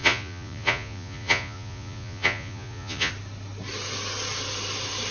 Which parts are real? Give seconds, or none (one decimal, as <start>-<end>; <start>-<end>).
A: 3.1-5.1